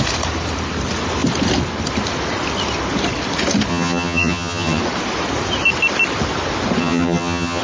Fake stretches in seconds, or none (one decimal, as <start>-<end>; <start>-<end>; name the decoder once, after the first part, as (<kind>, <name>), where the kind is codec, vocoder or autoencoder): 3.7-4.8 (vocoder, HiFi-GAN); 6.8-7.6